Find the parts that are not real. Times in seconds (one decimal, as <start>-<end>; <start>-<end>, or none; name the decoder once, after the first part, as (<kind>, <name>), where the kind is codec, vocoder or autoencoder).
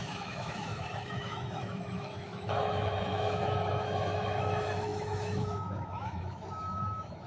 0.0-7.3 (autoencoder, DAC-VAE)